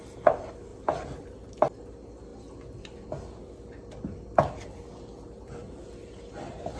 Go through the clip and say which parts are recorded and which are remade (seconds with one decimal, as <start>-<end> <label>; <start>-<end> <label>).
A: 0.0-0.7 recorded; 0.7-1.2 remade; 1.2-6.8 recorded